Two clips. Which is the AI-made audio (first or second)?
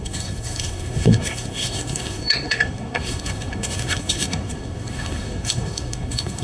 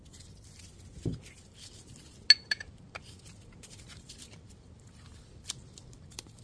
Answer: first